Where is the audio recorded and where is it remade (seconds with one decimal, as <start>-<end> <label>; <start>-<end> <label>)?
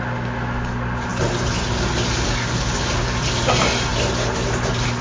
0.0-5.0 recorded